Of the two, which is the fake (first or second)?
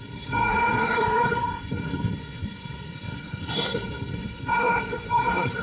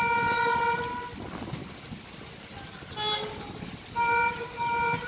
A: first